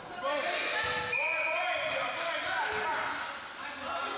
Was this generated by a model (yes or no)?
no